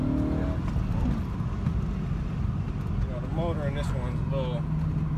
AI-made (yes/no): no